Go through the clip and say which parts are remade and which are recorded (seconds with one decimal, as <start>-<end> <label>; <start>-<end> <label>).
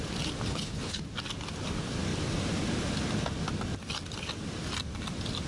0.0-0.5 recorded; 0.5-1.0 remade; 1.0-5.5 recorded